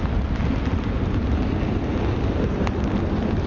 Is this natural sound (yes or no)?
yes